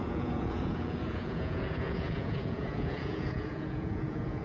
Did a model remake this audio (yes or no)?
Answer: yes